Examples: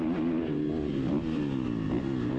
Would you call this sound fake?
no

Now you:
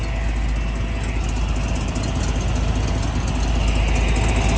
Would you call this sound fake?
no